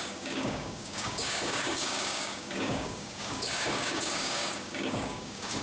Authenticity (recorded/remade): remade